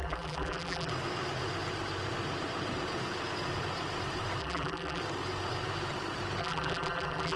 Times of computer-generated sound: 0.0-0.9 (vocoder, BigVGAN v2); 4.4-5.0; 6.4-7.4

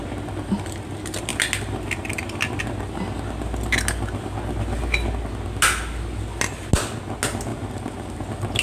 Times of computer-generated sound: 7.5-8.1 (vocoder, BigVGAN v2)